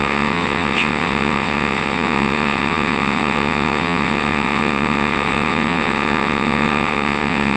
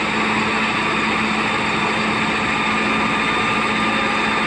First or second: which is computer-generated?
first